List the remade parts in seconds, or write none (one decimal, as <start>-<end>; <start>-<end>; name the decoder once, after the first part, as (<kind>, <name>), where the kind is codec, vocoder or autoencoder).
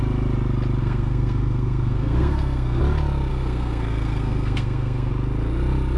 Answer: 0.8-2.8 (codec, SNAC); 3.3-5.1